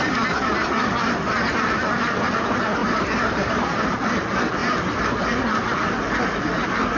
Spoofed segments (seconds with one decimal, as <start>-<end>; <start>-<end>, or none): 2.8-3.8